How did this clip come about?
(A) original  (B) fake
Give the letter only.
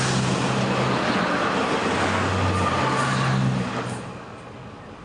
A